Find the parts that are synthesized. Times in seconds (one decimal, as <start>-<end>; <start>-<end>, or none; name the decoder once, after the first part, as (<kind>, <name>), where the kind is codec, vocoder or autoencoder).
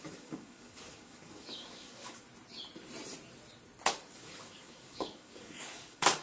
0.0-2.2 (codec, DAC); 4.1-6.2